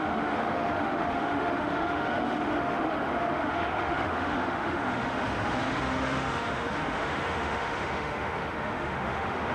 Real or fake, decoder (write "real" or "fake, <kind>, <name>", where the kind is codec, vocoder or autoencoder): fake, autoencoder, DAC-VAE